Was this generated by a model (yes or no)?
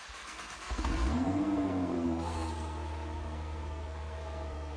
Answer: yes